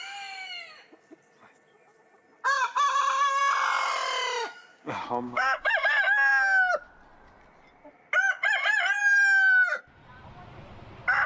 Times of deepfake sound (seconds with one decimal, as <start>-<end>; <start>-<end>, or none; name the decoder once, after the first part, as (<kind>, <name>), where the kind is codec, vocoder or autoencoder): 4.7-5.7 (codec, DAC)